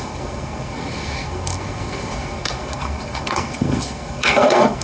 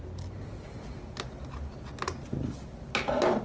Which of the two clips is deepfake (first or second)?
first